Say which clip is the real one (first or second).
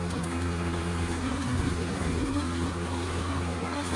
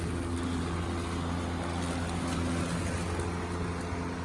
second